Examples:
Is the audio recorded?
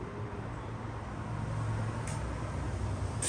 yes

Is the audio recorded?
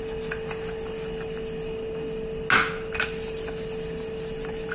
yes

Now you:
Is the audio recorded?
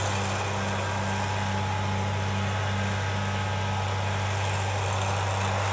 yes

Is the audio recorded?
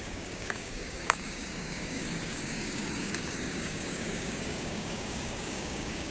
no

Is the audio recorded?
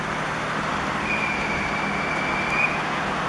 yes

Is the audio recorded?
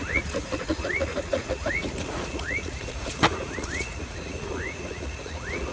no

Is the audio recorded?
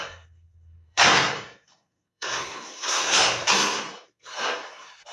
no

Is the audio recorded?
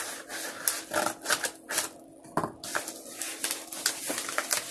yes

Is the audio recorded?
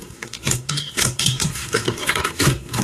no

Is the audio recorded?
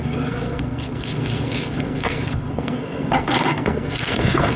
no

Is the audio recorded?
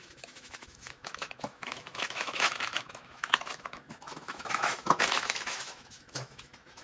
no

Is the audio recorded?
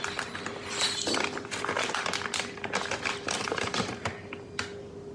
yes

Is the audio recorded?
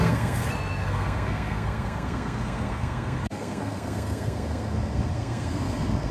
no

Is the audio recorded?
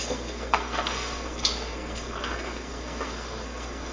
no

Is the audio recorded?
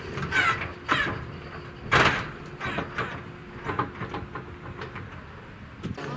yes